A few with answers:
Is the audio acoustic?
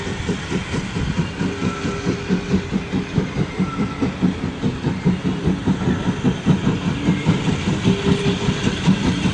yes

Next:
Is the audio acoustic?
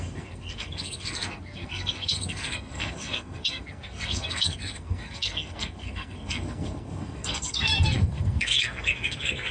no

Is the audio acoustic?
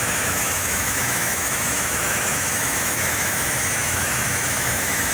no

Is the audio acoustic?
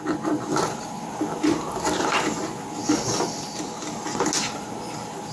yes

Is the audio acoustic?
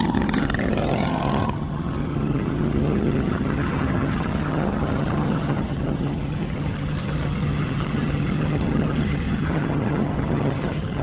no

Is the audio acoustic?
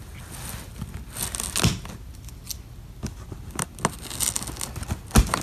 yes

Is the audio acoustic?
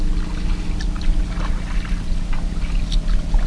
yes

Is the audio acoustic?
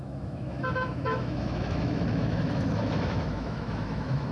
no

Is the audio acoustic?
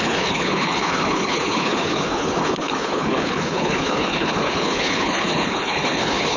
no